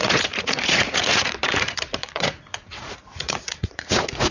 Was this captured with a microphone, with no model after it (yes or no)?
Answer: no